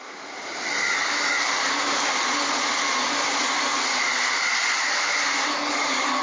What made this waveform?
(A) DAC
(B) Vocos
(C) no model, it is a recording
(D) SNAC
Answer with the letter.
C